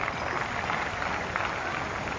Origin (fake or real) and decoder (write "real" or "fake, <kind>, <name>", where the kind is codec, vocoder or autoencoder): real